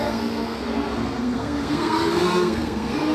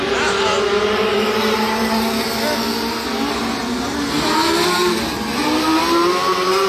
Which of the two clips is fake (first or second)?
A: first